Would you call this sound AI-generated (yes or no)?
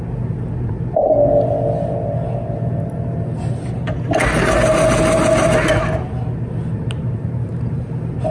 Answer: no